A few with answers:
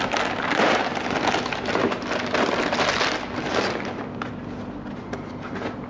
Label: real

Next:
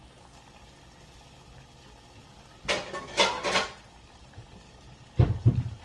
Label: real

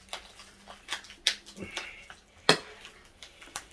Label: real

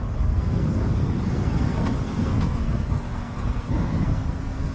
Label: fake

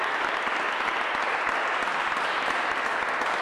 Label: real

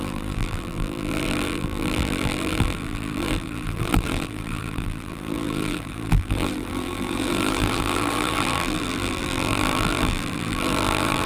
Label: fake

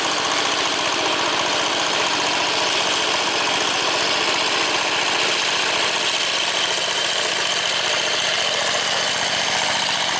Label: real